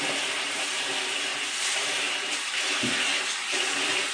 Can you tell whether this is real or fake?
fake